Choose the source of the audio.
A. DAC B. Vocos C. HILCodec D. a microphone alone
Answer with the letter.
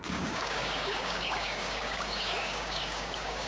A